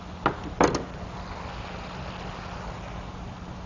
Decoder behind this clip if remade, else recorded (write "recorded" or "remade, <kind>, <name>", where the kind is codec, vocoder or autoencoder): recorded